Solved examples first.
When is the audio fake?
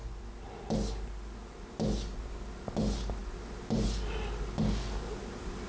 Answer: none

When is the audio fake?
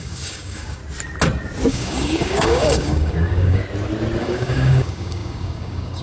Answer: 0.0-0.8 (codec, DAC); 1.7-3.6; 4.2-6.0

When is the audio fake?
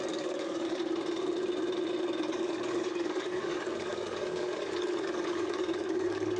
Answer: 0.0-0.8 (codec, DAC); 2.3-6.4